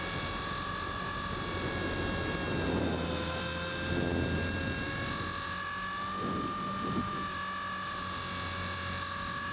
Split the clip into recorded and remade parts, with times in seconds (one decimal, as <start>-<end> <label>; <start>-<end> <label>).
0.0-9.5 recorded